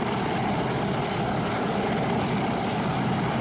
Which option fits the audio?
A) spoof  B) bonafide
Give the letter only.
B